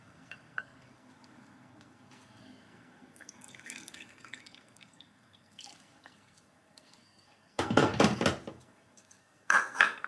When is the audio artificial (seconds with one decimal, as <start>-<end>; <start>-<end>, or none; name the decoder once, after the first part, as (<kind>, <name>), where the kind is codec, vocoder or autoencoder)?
0.0-7.9 (codec, SNAC); 8.5-10.1